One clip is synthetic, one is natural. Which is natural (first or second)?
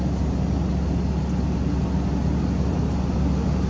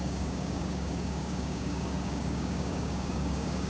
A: first